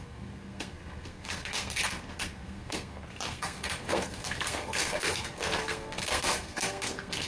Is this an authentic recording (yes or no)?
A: no